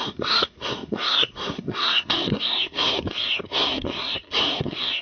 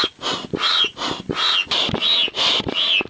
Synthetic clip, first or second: first